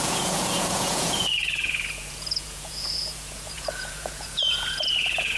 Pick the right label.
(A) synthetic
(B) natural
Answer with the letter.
A